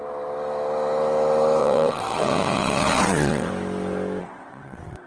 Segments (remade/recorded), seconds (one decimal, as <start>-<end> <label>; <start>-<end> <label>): 0.0-1.6 recorded; 1.6-3.5 remade; 3.5-4.2 recorded; 4.2-5.1 remade